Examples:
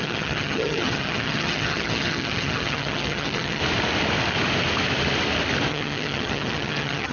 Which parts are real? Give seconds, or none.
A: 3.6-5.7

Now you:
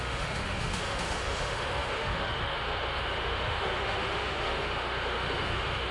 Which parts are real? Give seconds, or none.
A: none

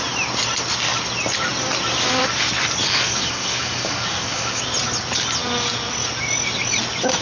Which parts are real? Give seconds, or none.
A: 0.0-2.8; 4.6-7.2

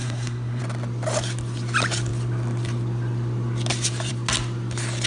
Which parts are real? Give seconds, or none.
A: 0.6-5.1